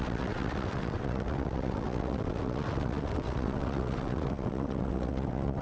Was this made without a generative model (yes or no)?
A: no